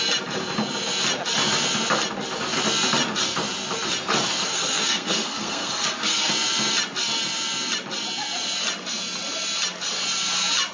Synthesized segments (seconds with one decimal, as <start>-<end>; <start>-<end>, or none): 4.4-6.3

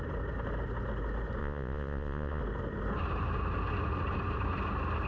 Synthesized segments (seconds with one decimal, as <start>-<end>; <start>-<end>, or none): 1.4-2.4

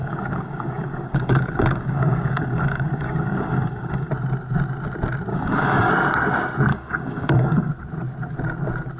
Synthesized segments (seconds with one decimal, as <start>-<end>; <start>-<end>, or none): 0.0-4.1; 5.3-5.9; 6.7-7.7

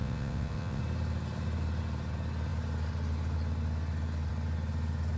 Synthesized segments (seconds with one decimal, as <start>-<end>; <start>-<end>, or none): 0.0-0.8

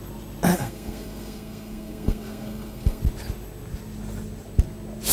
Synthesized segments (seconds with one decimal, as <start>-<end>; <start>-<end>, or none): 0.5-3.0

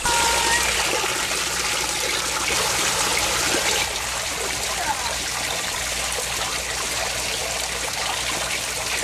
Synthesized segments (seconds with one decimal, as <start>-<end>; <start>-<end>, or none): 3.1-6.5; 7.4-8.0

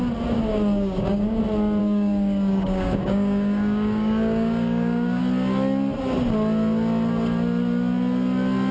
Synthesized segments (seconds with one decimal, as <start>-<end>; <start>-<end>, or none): 0.5-1.4; 1.8-5.2

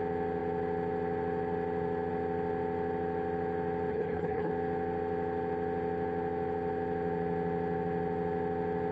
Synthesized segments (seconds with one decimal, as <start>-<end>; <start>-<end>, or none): 3.9-4.5